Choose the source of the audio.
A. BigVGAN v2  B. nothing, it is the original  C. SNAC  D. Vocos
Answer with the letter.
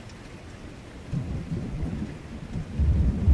B